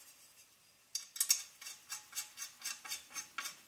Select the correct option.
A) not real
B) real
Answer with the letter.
B